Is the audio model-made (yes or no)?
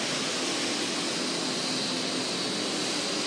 no